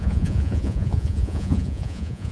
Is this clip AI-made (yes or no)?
yes